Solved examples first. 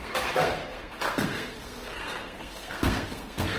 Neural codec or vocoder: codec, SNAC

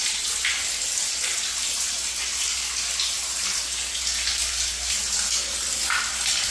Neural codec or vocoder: none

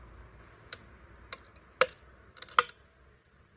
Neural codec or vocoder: none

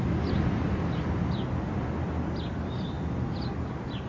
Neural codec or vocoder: none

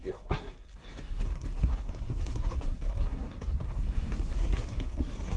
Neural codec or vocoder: codec, SNAC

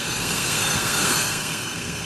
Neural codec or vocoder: codec, SNAC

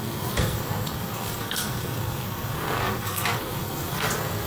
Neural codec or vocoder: codec, SNAC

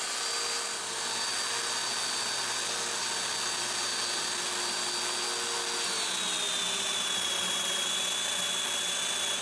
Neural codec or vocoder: none